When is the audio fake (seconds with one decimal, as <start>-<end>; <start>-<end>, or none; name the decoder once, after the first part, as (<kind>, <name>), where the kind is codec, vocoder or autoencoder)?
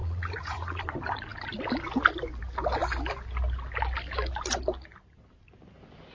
0.0-0.8 (vocoder, Vocos)